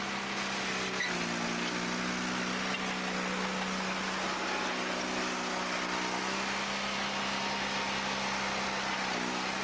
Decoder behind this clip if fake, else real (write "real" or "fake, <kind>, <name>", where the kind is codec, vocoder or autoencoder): real